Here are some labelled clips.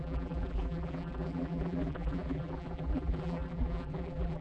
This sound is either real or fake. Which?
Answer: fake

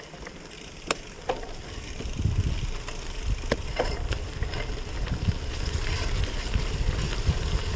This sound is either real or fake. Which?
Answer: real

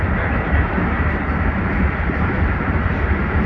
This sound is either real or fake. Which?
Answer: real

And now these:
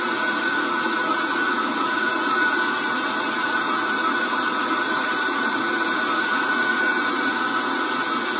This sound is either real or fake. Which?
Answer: fake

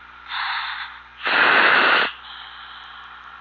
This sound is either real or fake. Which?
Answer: real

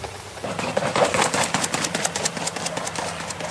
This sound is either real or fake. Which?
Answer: real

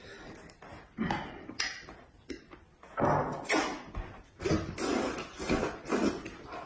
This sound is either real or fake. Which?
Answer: real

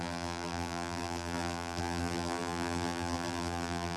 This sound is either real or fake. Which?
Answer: fake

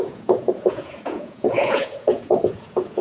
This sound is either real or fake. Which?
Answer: fake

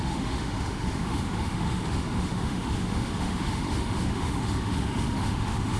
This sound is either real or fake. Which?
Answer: fake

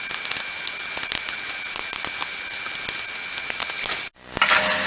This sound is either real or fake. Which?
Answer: real